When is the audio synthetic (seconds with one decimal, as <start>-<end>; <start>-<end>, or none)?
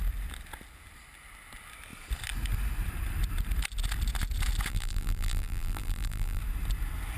4.7-6.4